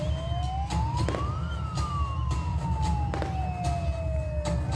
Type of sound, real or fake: real